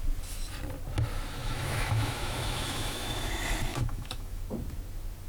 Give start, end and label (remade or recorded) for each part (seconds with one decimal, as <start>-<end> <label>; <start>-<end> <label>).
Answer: 0.0-1.4 recorded; 1.4-3.3 remade; 3.3-3.7 recorded; 3.7-4.4 remade; 4.4-5.3 recorded